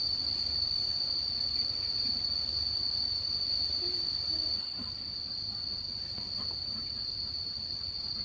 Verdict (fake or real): fake